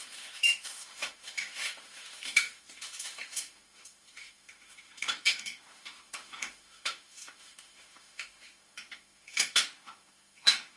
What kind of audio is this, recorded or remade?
remade